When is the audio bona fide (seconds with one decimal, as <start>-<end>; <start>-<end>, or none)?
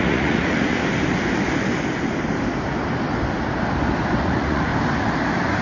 0.8-4.2; 4.7-5.6